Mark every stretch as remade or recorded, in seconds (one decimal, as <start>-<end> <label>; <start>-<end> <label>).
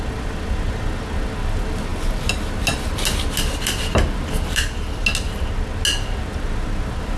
0.0-7.2 recorded